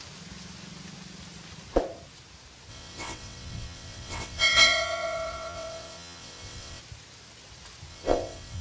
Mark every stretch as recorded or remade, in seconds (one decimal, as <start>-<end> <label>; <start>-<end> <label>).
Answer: 0.0-2.7 recorded; 2.7-6.8 remade; 6.8-7.9 recorded; 7.9-8.6 remade